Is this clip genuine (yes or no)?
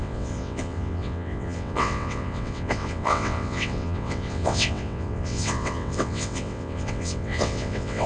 no